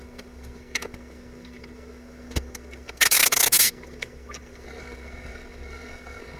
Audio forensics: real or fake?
fake